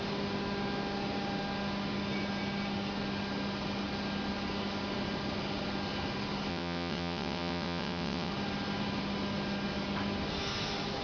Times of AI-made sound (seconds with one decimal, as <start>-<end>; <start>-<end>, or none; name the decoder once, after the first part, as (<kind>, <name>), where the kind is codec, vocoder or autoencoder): 6.5-8.3 (vocoder, WaveNeXt)